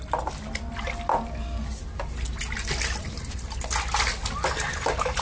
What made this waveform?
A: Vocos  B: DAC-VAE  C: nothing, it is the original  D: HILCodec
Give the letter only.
C